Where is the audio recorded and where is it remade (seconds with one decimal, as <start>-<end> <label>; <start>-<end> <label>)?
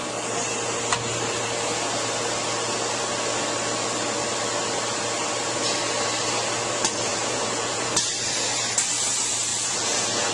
0.0-7.1 recorded; 7.1-7.9 remade; 7.9-9.5 recorded; 9.5-10.3 remade